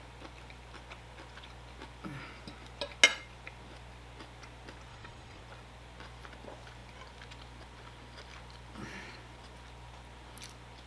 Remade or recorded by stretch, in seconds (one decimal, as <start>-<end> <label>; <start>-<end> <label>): 0.0-4.9 recorded; 4.9-5.4 remade; 5.4-10.9 recorded